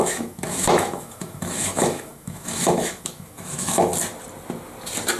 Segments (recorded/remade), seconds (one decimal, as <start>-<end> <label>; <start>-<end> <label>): 0.0-3.9 remade; 3.9-5.2 recorded